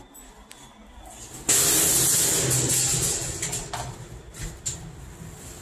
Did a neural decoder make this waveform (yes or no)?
no